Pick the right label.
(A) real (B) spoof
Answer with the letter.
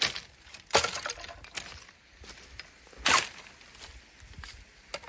A